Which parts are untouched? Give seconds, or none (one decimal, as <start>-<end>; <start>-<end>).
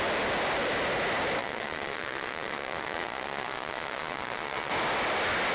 0.0-1.4; 4.7-5.5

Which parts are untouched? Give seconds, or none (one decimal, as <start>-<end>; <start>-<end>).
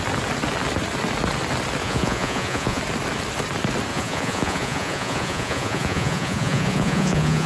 0.0-1.8; 2.8-3.9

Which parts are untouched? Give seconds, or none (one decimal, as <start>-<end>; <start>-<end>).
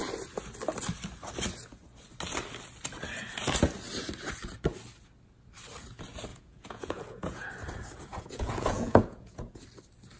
0.0-6.3; 7.5-8.1; 9.6-10.2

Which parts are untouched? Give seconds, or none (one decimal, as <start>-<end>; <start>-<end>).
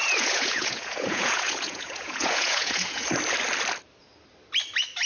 3.1-5.1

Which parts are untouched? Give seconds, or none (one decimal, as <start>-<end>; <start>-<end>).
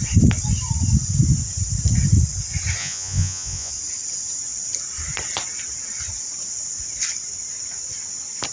0.0-2.8; 3.7-8.5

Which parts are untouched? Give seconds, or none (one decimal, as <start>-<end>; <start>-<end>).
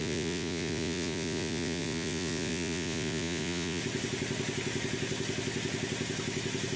3.8-6.8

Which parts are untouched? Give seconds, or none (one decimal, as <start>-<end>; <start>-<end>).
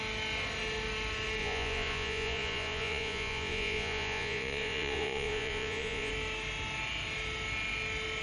0.0-1.4; 6.1-8.2